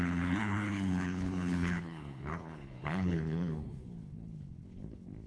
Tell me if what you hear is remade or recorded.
remade